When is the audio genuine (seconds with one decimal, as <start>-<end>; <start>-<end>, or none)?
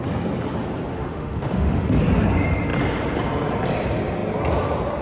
0.0-0.9; 2.0-5.0